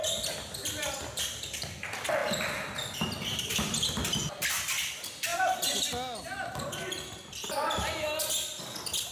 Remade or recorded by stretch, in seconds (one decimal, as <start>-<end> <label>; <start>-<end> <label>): 0.0-9.1 recorded